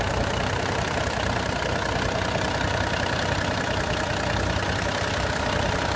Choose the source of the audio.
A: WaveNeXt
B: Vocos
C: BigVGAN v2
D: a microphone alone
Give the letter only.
D